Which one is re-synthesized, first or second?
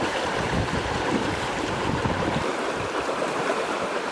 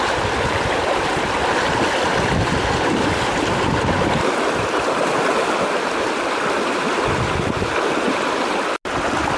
first